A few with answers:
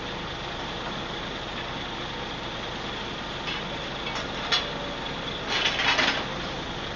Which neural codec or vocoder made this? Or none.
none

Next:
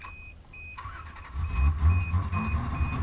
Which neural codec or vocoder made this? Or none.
none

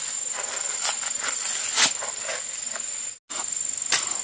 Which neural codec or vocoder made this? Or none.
none